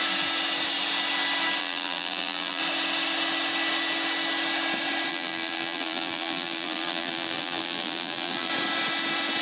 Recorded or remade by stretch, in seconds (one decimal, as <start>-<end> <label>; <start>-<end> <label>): 0.0-1.6 recorded; 1.6-2.6 remade; 2.6-5.1 recorded; 5.1-8.5 remade; 8.5-9.4 recorded